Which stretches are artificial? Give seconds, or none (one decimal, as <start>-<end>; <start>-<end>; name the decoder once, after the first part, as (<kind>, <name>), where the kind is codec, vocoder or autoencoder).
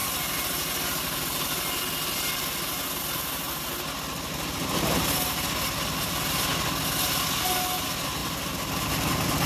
none